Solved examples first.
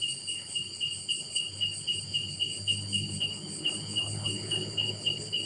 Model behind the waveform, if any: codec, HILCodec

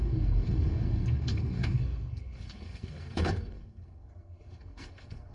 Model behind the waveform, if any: codec, SNAC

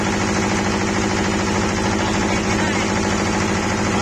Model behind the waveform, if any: none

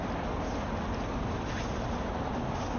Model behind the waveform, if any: none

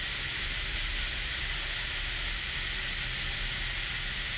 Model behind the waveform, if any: none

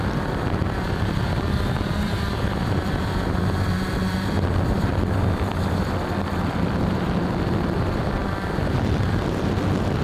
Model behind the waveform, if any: vocoder, BigVGAN v2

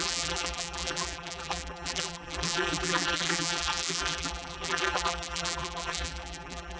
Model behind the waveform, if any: vocoder, BigVGAN v2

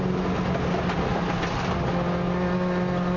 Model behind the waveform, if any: none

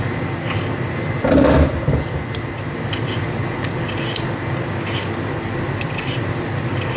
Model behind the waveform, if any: none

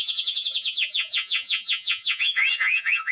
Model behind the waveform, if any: vocoder, Vocos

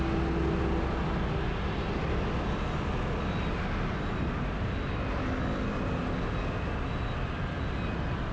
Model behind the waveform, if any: none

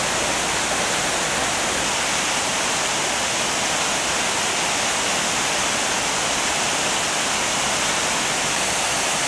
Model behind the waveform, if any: none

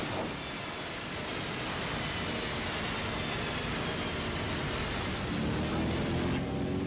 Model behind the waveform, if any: none